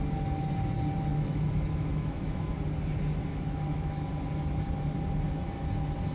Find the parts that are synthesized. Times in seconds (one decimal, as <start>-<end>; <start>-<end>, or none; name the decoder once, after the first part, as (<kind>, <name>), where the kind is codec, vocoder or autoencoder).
1.1-2.5 (autoencoder, DAC-VAE); 3.3-4.1